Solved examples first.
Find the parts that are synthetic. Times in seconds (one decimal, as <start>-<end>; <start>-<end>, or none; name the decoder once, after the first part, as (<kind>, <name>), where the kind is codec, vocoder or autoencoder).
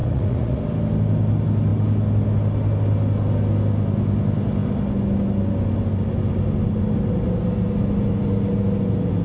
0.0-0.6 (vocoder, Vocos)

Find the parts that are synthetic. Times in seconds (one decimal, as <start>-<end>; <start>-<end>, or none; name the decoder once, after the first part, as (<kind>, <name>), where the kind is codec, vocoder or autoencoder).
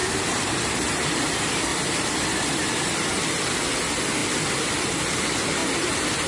0.0-0.6 (vocoder, BigVGAN v2); 1.7-3.4; 5.6-6.3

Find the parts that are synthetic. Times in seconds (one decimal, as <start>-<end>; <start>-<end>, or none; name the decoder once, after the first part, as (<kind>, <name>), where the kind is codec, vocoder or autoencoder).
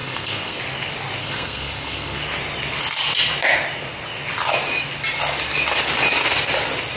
0.0-0.6 (codec, SNAC); 1.2-2.2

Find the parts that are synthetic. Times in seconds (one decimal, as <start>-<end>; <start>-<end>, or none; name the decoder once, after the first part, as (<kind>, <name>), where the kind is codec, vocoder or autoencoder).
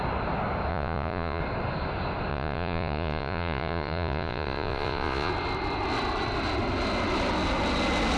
0.7-1.4 (vocoder, Vocos); 2.3-5.3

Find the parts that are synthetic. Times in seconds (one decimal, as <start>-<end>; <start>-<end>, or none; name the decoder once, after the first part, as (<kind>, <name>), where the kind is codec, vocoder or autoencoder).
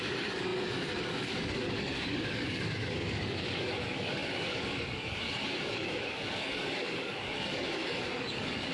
0.0-8.7 (codec, DAC)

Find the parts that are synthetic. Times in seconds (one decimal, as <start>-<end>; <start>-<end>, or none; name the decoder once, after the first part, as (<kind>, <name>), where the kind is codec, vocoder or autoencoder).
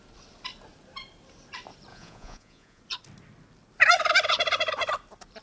1.9-2.8 (vocoder, Vocos)